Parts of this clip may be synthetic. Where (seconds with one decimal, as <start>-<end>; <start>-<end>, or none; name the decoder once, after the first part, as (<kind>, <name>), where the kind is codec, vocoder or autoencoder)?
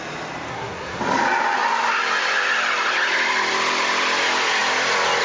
0.5-1.0 (codec, SNAC)